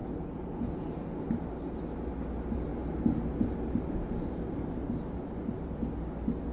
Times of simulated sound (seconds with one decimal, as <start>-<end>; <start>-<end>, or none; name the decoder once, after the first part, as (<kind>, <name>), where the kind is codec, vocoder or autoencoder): 0.0-1.2 (vocoder, Vocos)